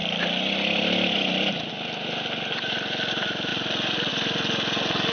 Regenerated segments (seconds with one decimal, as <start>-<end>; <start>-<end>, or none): none